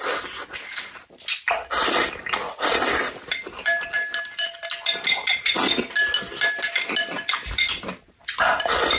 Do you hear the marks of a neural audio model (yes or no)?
no